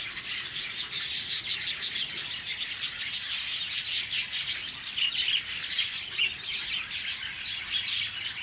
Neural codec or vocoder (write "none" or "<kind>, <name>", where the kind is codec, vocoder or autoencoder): none